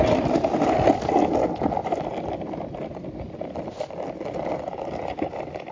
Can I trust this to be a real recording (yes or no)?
yes